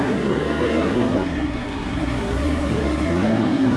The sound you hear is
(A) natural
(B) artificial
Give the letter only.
B